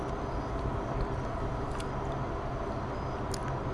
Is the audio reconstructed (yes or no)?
no